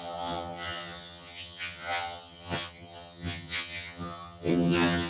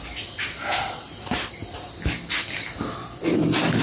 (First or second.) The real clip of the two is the second